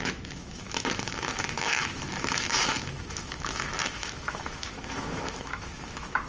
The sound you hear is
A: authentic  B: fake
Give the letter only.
B